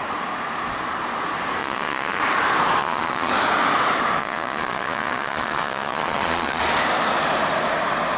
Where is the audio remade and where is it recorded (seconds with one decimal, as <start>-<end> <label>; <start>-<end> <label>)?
0.0-1.6 recorded; 1.6-2.2 remade; 2.2-2.8 recorded; 2.8-3.3 remade; 3.3-4.2 recorded; 4.2-6.6 remade; 6.6-8.2 recorded